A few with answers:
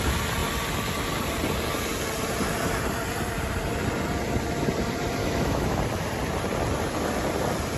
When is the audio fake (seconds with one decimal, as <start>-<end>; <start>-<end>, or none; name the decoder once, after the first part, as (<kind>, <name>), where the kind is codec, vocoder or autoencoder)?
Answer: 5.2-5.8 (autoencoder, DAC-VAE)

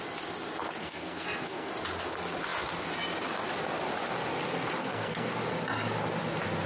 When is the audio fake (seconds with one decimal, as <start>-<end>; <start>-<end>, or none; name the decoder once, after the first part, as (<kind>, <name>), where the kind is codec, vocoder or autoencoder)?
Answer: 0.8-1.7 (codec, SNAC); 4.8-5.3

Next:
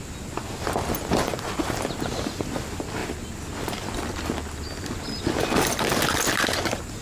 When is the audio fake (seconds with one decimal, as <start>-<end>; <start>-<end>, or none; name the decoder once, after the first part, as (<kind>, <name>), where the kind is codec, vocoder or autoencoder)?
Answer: none

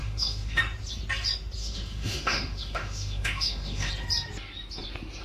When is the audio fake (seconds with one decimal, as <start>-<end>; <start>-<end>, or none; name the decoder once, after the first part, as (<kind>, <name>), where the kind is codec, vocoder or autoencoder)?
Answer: 0.0-0.6 (autoencoder, DAC-VAE); 1.6-3.9

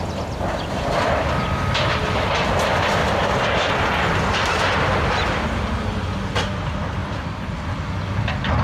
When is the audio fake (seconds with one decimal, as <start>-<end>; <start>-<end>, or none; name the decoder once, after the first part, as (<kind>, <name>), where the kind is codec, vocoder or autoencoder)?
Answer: none